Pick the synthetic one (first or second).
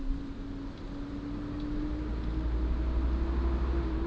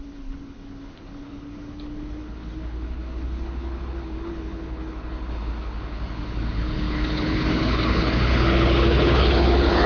second